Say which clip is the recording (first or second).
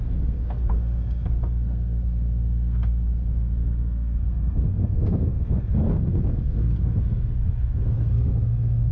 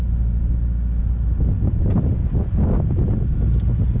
second